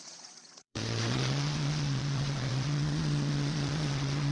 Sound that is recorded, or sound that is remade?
remade